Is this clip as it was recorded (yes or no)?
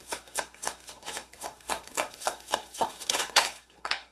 no